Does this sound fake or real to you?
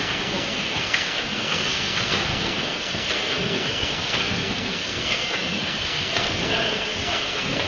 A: fake